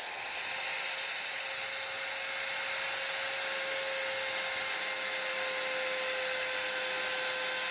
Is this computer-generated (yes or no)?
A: no